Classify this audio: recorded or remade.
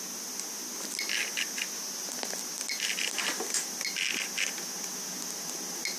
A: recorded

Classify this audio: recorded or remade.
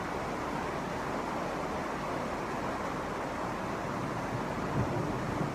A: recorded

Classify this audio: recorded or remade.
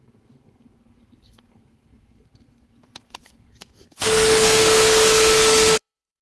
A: remade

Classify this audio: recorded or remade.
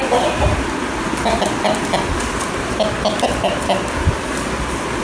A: recorded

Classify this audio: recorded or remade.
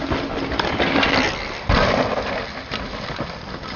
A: recorded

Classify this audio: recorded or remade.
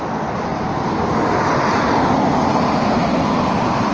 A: recorded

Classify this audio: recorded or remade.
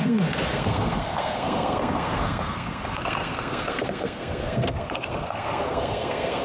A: remade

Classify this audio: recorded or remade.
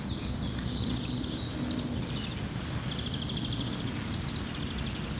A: recorded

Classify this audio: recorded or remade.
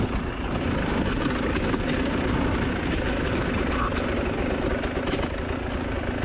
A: recorded